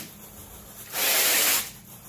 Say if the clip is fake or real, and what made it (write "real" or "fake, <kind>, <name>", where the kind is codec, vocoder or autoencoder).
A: real